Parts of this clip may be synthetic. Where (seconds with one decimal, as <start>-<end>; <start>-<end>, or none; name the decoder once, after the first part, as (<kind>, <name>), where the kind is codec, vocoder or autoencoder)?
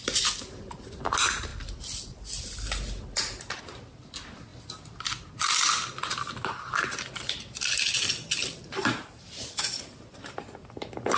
none